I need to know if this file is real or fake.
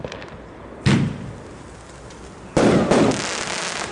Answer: real